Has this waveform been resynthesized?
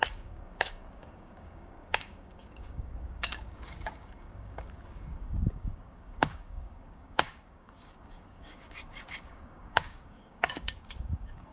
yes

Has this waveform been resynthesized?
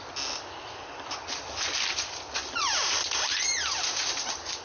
no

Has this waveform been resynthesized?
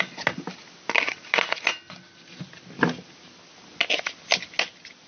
no